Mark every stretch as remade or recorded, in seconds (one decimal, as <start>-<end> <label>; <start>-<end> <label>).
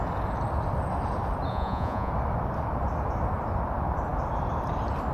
0.0-1.5 recorded; 1.5-2.1 remade; 2.1-5.1 recorded